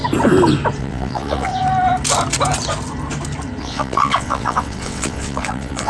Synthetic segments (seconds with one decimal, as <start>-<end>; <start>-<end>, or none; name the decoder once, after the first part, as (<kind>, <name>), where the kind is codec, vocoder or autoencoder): 0.8-1.5 (vocoder, WaveNeXt); 3.6-5.9